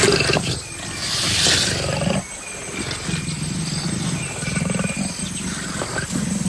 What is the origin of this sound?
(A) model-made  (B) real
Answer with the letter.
B